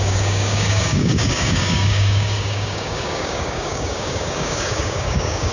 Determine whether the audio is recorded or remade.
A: remade